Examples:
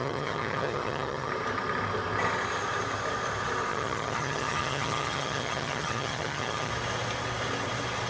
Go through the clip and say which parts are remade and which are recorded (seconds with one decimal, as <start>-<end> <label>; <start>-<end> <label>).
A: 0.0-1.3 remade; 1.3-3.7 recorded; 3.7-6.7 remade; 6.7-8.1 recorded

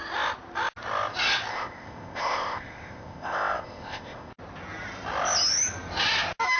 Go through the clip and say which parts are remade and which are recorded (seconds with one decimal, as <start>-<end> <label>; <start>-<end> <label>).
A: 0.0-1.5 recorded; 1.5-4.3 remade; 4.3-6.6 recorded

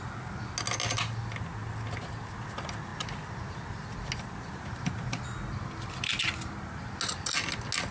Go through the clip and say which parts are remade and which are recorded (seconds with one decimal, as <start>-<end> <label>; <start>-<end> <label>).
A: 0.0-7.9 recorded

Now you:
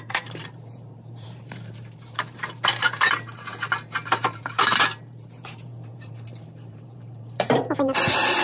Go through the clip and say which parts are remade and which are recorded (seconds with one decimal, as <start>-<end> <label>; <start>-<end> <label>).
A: 0.0-3.5 remade; 3.5-4.1 recorded; 4.1-8.4 remade

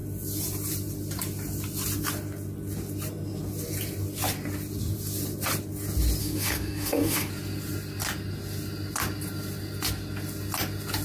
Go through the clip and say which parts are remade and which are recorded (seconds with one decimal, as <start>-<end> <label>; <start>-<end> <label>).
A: 0.0-6.2 recorded; 6.2-7.3 remade; 7.3-11.0 recorded